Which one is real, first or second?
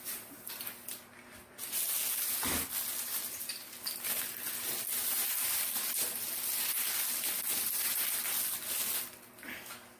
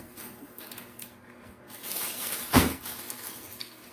first